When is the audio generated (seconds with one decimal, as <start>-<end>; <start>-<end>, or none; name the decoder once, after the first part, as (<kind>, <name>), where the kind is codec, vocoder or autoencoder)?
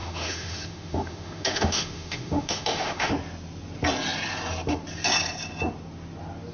0.0-3.1 (autoencoder, DAC-VAE)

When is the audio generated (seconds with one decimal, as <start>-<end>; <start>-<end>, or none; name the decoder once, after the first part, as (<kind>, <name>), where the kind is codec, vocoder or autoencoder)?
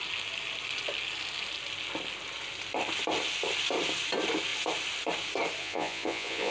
5.6-6.5 (vocoder, Vocos)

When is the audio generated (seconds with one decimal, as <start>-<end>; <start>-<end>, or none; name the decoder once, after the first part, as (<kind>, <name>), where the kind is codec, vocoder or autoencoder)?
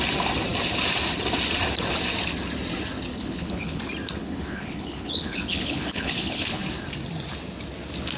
3.1-3.8 (codec, HILCodec); 4.2-6.6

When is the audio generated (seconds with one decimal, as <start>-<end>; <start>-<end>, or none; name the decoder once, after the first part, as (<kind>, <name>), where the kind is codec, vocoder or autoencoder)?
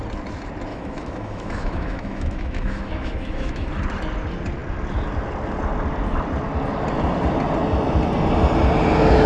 0.7-3.7 (autoencoder, DAC-VAE)